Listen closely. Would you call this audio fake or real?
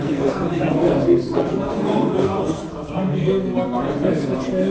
fake